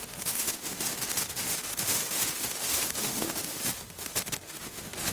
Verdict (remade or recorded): remade